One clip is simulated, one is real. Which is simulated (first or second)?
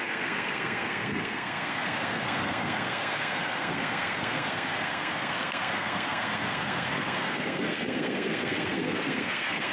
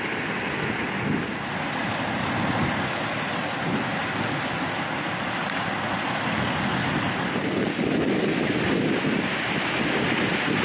first